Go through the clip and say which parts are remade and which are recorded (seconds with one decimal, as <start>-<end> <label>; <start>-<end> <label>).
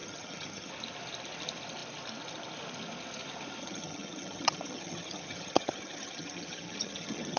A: 0.0-0.7 remade; 0.7-3.6 recorded; 3.6-7.4 remade